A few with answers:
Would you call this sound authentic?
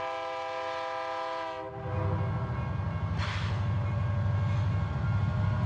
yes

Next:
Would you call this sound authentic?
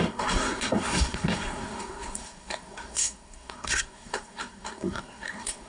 no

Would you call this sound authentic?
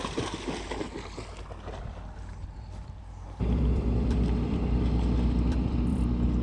no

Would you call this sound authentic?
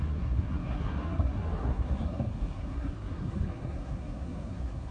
no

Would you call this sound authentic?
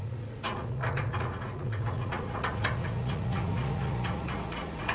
no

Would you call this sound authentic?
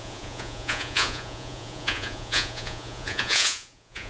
no